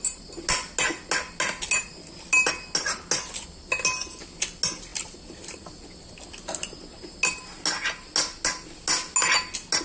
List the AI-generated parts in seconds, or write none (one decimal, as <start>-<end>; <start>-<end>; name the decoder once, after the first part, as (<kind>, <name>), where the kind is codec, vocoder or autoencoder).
none

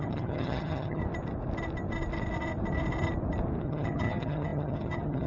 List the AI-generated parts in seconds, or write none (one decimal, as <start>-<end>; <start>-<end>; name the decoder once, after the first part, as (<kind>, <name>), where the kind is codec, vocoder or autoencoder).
0.0-1.0 (vocoder, HiFi-GAN); 3.6-5.3

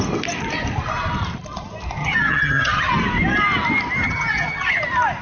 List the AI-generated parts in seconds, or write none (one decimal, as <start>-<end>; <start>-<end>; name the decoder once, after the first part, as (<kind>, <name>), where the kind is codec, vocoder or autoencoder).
2.0-2.9 (vocoder, HiFi-GAN); 4.0-4.8

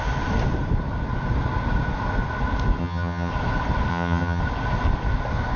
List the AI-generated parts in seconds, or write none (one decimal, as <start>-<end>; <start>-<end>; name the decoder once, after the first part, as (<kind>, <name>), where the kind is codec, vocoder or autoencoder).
2.8-3.3 (vocoder, HiFi-GAN); 3.9-4.4

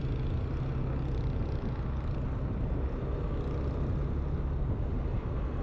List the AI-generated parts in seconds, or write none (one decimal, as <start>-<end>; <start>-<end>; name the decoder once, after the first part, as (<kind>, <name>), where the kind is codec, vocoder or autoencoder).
none

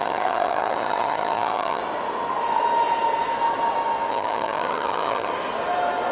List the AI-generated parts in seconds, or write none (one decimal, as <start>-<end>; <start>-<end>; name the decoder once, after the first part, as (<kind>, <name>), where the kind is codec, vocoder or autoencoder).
0.0-1.8 (vocoder, HiFi-GAN); 4.1-5.3

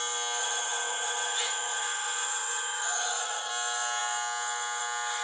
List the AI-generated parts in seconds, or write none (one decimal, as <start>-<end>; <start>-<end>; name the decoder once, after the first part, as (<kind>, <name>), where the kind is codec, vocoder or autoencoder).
0.4-3.5 (vocoder, HiFi-GAN)